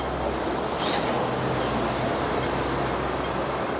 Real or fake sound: real